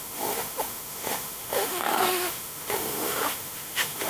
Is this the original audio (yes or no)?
no